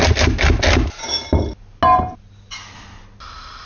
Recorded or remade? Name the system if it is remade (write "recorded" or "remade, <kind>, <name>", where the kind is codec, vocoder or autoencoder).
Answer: recorded